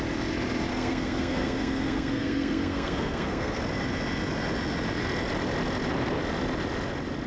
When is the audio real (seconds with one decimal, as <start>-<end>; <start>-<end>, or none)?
0.0-0.7; 3.6-7.3